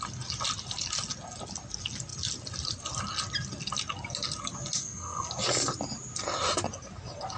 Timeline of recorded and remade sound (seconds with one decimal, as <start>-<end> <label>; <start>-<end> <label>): 0.0-4.8 recorded; 4.8-5.3 remade; 5.3-7.4 recorded